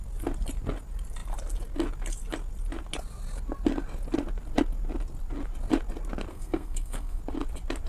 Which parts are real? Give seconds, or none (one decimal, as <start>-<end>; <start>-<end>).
0.0-6.3; 7.2-7.9